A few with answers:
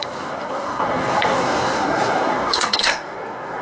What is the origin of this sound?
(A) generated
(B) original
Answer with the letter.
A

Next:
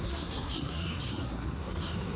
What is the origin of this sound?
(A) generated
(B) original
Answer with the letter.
A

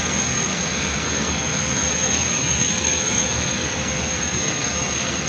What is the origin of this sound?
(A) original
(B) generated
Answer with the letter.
B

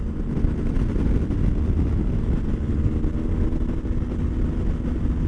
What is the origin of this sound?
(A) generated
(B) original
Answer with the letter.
B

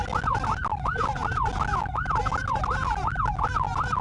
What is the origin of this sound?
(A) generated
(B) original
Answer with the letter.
B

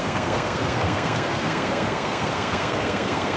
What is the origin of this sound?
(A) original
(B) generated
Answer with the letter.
B